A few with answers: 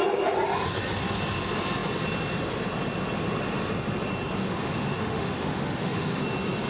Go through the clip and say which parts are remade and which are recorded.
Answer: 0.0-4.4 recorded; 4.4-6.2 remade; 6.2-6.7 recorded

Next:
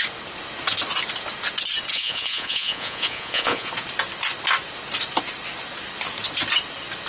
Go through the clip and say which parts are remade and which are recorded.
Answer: 0.0-1.9 recorded; 1.9-3.7 remade; 3.7-7.1 recorded

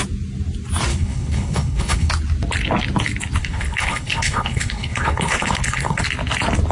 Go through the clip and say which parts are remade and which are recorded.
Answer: 0.0-0.9 recorded; 0.9-2.1 remade; 2.1-3.4 recorded; 3.4-6.0 remade; 6.0-6.7 recorded

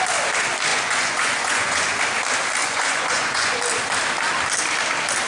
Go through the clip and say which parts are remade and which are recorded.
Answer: 0.0-0.7 recorded; 0.7-2.0 remade; 2.0-2.6 recorded; 2.6-3.6 remade; 3.6-5.3 recorded